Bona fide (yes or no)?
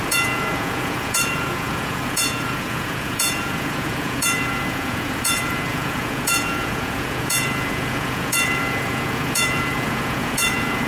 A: no